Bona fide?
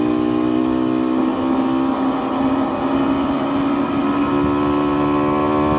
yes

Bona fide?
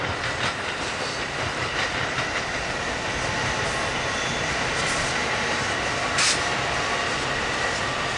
yes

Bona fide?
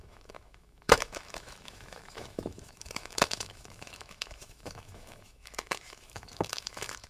no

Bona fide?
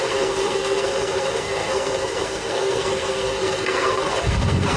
no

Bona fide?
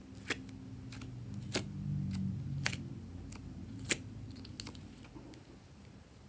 yes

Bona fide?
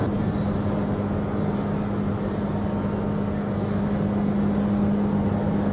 yes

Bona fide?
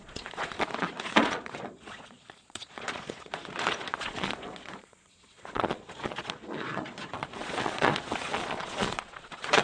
no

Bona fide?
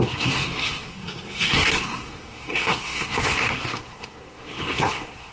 no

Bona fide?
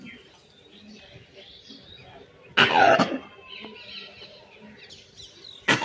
yes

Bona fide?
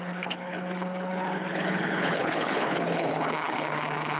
no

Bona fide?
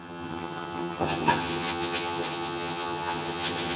no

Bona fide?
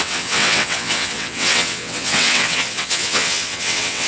no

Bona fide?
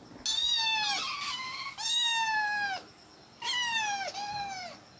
yes